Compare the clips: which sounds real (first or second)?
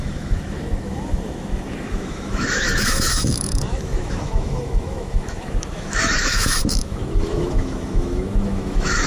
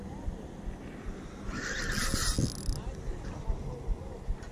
second